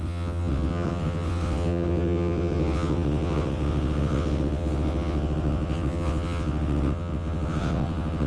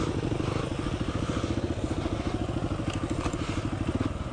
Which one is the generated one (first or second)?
first